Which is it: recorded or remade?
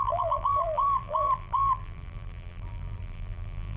remade